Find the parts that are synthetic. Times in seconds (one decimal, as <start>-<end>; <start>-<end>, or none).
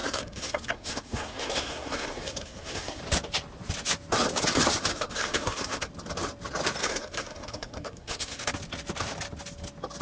0.0-3.0; 4.9-5.9; 6.8-8.5